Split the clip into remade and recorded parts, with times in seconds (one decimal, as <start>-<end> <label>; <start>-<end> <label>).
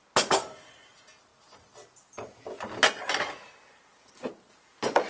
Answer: 0.0-5.1 recorded